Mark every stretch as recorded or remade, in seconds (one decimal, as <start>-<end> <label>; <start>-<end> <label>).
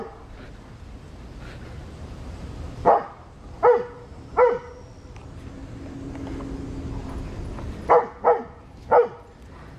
0.0-1.8 recorded; 1.8-4.9 remade; 4.9-9.8 recorded